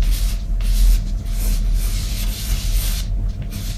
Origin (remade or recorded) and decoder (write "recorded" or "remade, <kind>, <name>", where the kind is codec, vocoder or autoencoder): recorded